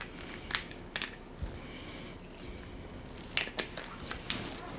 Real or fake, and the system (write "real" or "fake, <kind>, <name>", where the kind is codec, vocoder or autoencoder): real